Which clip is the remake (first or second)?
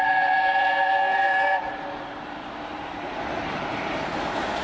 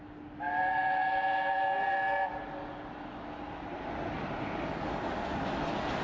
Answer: first